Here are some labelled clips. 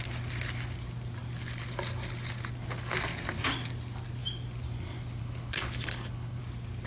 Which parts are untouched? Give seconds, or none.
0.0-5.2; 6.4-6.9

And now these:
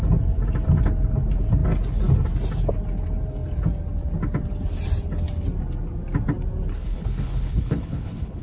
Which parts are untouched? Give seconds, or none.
0.0-6.7